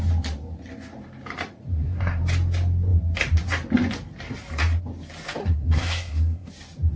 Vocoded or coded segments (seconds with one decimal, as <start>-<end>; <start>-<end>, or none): 1.7-2.2; 5.4-6.5